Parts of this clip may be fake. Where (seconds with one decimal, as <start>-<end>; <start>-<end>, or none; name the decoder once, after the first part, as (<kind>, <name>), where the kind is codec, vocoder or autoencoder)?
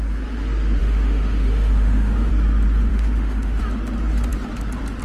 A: 0.8-2.3 (autoencoder, DAC-VAE); 2.9-3.6